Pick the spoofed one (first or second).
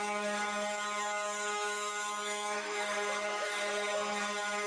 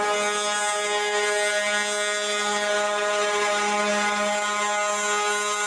first